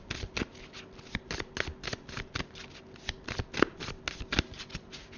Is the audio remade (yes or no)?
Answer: no